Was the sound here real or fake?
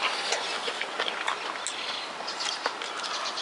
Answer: real